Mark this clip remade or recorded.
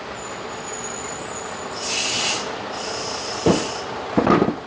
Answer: recorded